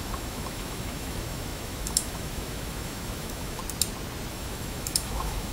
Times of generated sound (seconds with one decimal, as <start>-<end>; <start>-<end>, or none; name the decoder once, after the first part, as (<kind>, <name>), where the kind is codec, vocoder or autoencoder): 0.0-3.6 (autoencoder, DAC-VAE); 4.3-5.5